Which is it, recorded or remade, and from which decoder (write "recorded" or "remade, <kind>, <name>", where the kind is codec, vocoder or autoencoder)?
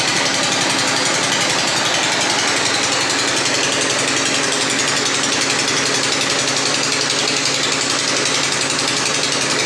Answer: recorded